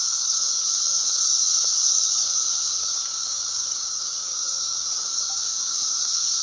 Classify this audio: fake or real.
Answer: fake